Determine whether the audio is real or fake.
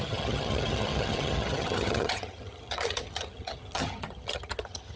fake